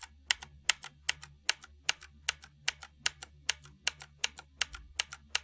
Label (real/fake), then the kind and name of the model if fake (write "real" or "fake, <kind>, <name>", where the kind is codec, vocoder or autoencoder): real